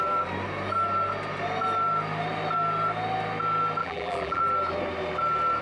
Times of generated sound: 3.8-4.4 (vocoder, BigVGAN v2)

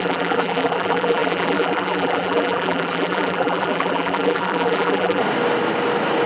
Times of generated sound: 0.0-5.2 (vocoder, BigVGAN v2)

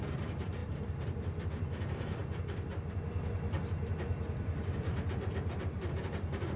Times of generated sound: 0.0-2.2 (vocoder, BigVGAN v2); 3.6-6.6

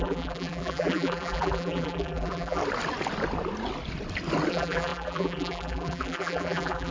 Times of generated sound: 0.0-2.6 (vocoder, BigVGAN v2); 4.5-6.9